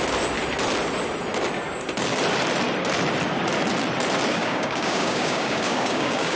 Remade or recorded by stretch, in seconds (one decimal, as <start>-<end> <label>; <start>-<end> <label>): 0.0-4.3 recorded; 4.3-6.4 remade